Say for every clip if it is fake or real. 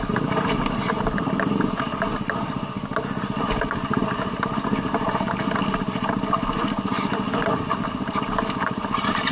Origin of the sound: real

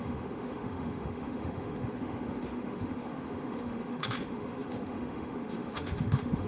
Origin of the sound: fake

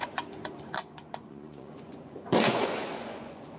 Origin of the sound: fake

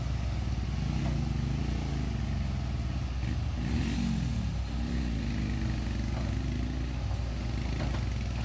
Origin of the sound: real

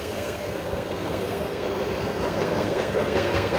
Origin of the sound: fake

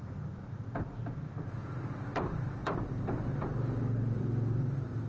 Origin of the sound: fake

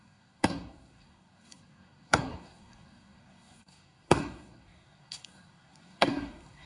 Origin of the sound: fake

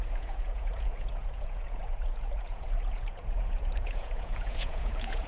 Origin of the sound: fake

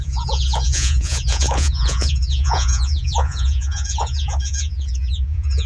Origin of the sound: fake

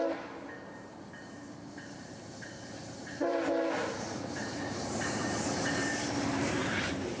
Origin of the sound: fake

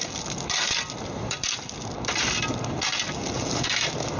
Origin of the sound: real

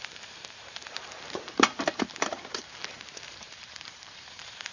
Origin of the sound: fake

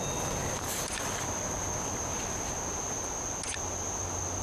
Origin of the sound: real